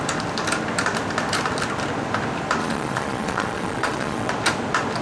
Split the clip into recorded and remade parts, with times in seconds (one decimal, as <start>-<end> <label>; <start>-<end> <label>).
0.0-2.6 recorded; 2.6-4.3 remade; 4.3-5.0 recorded